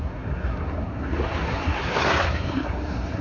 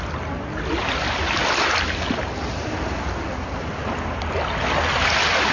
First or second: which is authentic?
second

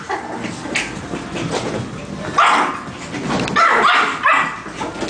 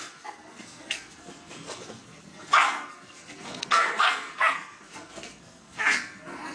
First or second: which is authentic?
first